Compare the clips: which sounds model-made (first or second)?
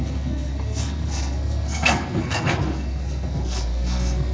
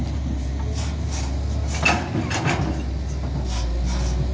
first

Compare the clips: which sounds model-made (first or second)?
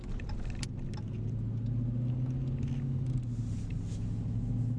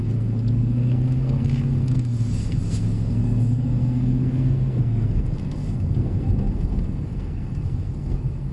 second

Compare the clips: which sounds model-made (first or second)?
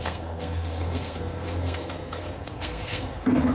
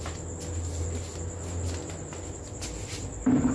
first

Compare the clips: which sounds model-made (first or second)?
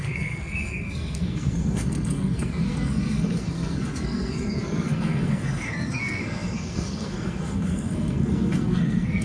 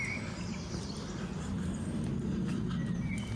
first